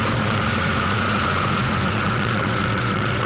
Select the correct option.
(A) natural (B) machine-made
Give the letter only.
B